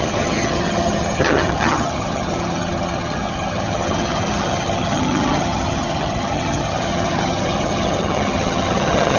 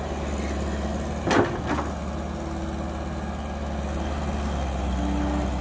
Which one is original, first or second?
second